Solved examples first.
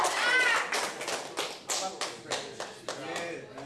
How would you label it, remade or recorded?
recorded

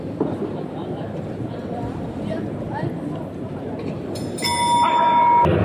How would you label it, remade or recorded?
recorded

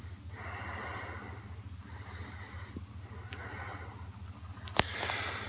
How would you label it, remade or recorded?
recorded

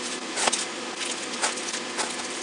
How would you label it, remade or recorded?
recorded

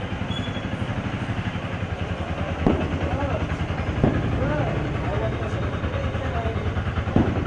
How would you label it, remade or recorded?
recorded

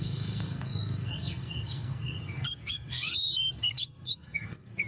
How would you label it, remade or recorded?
remade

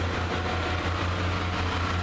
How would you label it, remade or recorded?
recorded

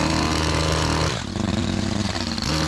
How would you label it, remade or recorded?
remade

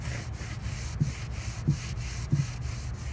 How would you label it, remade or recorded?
recorded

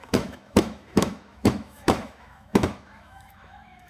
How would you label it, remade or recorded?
remade